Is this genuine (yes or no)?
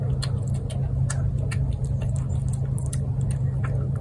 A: yes